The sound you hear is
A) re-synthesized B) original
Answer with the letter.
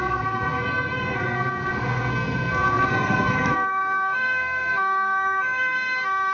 A